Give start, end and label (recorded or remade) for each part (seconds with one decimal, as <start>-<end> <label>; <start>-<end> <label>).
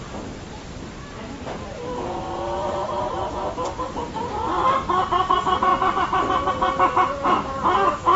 0.0-8.2 recorded